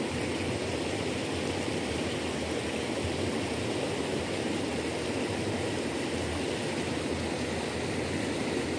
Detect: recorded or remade recorded